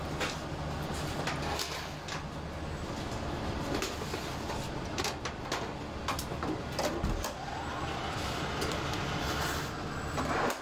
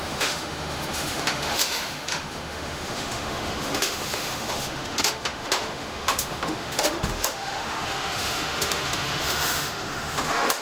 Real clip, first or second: first